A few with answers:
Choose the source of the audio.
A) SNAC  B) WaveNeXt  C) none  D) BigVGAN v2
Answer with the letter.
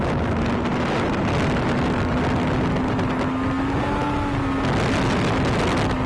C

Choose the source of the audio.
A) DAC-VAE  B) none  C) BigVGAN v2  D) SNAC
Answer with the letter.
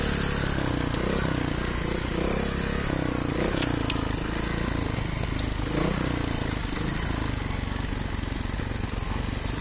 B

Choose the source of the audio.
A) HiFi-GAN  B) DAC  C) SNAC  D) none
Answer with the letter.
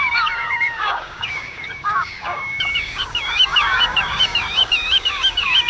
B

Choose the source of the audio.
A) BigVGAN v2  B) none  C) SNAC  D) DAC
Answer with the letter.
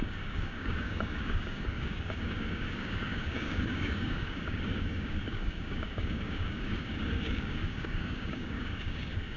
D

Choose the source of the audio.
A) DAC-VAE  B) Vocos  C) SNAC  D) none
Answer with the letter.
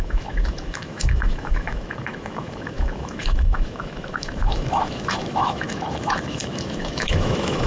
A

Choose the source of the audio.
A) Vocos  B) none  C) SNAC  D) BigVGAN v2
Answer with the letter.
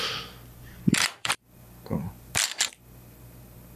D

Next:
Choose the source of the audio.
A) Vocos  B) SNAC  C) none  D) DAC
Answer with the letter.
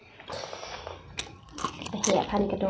C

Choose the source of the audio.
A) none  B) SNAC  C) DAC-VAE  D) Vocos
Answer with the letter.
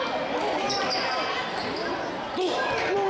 A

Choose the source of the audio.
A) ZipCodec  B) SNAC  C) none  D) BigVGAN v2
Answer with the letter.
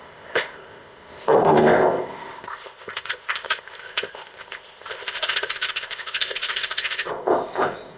A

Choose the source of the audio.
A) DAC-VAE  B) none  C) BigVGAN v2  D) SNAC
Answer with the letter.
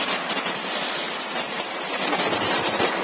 C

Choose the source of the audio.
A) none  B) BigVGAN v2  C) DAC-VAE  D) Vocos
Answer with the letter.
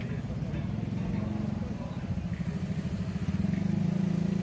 A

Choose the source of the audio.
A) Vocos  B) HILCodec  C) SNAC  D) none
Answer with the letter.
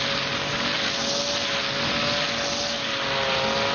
D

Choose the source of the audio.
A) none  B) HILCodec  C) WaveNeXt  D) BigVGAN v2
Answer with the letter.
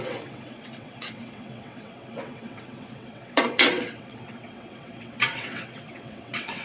C